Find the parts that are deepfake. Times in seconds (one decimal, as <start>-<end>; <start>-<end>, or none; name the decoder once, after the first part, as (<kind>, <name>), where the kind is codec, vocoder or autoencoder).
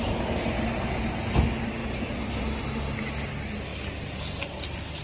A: none